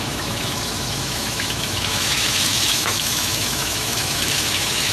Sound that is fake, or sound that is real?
fake